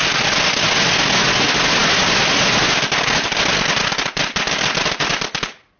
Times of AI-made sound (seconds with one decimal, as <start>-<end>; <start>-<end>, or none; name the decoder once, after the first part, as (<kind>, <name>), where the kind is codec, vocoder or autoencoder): none